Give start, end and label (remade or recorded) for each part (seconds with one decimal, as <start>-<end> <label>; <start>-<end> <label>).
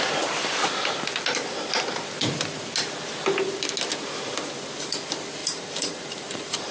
0.0-5.4 recorded; 5.4-6.7 remade